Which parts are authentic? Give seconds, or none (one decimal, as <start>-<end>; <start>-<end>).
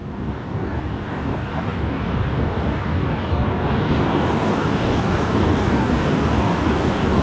none